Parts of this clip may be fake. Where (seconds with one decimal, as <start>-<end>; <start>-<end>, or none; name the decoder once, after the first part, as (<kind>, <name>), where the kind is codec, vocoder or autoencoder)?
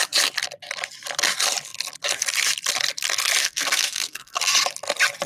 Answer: 3.4-4.4 (codec, SNAC)